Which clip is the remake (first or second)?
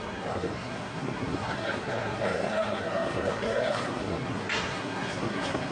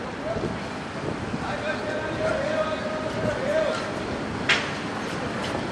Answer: first